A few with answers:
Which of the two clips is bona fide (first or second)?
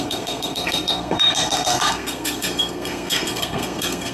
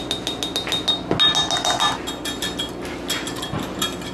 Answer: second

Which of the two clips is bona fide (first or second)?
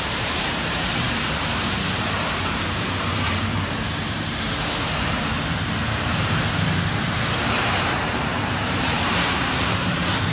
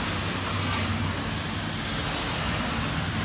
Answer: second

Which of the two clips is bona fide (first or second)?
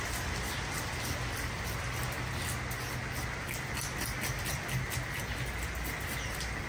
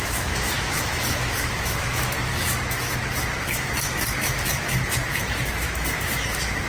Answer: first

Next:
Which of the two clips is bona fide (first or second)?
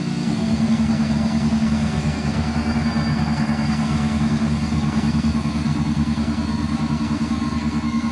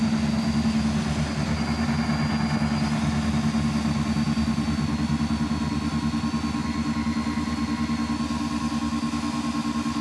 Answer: second